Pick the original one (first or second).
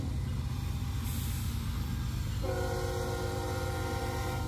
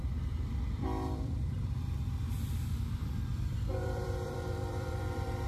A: first